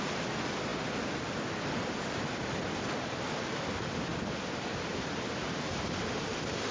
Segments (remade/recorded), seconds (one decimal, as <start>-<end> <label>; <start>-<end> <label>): 0.0-6.7 recorded